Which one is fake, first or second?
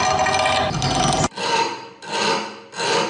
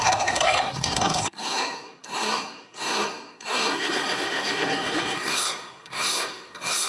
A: second